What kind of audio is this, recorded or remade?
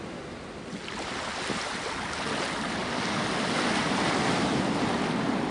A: recorded